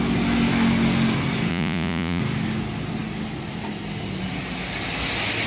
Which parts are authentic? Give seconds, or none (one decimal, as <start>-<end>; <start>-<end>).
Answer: 0.0-1.5; 2.2-5.5